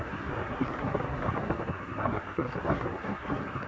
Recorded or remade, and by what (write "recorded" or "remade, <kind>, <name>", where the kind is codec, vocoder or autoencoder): remade, codec, SNAC